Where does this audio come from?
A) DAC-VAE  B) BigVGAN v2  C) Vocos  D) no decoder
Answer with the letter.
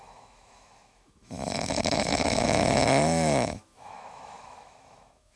A